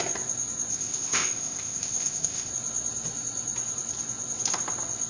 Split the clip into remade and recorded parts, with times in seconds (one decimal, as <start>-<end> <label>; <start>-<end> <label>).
0.0-0.7 recorded; 0.7-2.5 remade; 2.5-5.1 recorded